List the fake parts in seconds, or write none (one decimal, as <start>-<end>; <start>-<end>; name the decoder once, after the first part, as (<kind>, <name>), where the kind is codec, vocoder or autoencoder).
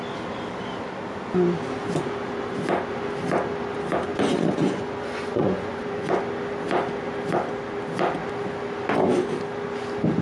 4.1-6.2 (vocoder, Vocos)